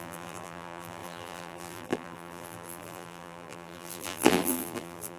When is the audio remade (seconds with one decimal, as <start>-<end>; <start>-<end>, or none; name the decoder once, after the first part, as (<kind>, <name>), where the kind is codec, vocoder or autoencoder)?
0.0-5.2 (vocoder, BigVGAN v2)